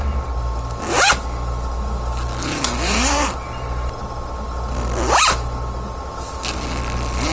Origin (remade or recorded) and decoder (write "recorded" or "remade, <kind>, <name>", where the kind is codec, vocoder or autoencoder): recorded